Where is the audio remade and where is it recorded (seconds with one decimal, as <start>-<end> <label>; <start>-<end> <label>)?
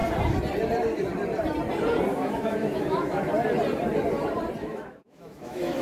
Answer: 0.0-2.1 recorded; 2.1-3.3 remade; 3.3-4.6 recorded; 4.6-5.8 remade